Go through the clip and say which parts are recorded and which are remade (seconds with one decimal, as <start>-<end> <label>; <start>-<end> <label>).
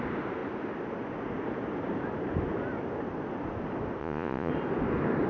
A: 0.0-4.0 recorded; 4.0-4.5 remade; 4.5-5.3 recorded